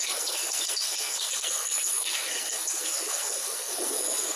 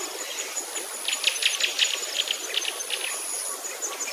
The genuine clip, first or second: second